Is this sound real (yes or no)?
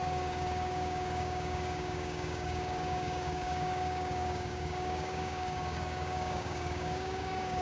no